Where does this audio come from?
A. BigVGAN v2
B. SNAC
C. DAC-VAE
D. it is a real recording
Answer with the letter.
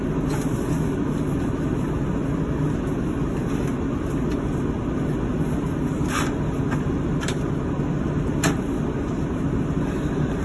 D